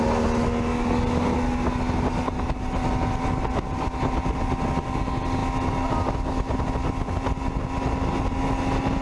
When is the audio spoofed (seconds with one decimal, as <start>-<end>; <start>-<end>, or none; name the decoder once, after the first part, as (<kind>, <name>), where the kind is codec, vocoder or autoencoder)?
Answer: none